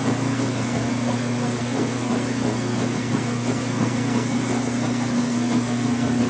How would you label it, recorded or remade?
remade